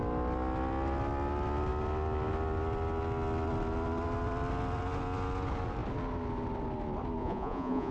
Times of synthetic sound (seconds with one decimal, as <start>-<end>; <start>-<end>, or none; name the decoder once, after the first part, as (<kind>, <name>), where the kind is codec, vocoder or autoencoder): 7.2-7.9 (vocoder, Vocos)